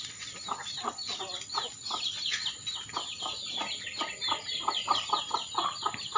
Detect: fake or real real